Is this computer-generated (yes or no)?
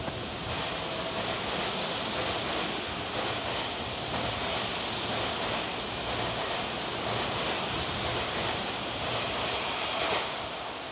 no